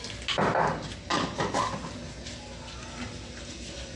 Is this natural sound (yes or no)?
yes